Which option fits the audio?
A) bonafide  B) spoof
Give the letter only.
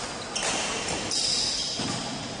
A